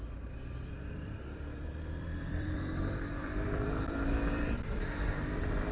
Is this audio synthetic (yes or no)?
yes